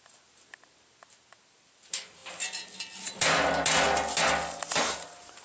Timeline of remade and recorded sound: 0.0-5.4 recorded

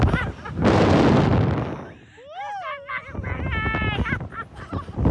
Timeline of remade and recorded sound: 0.0-5.1 recorded

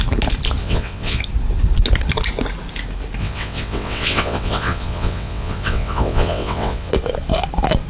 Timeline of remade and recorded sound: 0.0-0.6 recorded; 0.6-1.2 remade; 1.2-3.2 recorded; 3.2-6.9 remade; 6.9-7.9 recorded